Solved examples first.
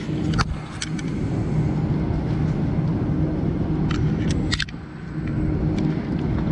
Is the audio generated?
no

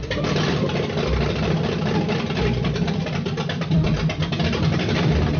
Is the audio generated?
yes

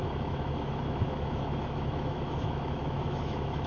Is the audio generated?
yes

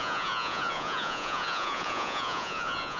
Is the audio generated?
yes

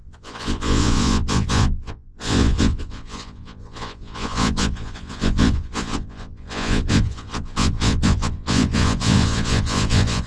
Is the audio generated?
yes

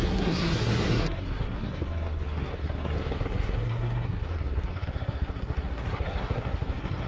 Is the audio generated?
yes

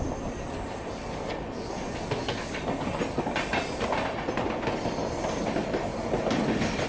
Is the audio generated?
no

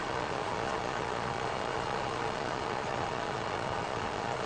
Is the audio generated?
yes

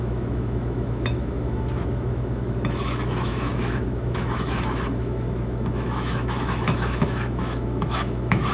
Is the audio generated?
yes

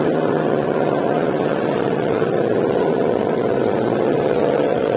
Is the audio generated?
yes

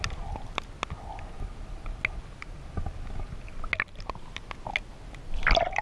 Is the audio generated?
no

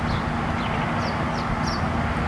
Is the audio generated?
no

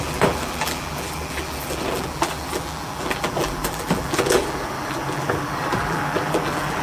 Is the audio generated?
yes